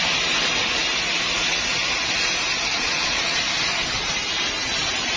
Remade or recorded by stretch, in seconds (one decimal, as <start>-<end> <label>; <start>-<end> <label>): 0.0-2.7 recorded; 2.7-3.4 remade; 3.4-5.2 recorded